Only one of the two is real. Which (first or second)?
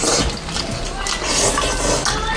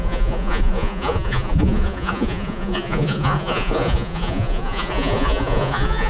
first